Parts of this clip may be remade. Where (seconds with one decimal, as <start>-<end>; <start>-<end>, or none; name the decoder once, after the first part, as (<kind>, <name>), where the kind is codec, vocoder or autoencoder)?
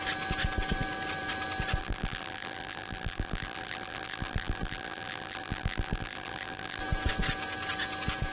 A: 1.8-6.8 (vocoder, BigVGAN v2)